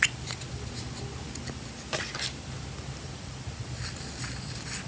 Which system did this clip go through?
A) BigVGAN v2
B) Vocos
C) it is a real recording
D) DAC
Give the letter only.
C